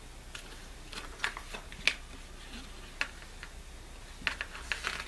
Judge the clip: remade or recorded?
recorded